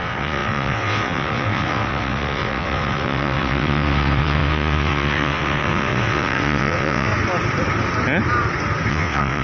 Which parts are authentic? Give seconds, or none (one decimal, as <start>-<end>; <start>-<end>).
7.1-8.9